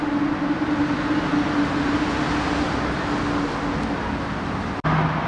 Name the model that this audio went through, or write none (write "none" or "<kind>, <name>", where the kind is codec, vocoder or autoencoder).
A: none